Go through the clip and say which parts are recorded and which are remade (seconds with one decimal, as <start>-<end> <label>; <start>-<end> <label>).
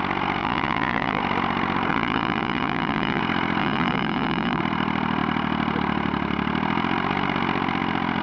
0.0-0.4 recorded; 0.4-1.2 remade; 1.2-1.9 recorded; 1.9-3.2 remade; 3.2-3.6 recorded; 3.6-4.6 remade; 4.6-8.2 recorded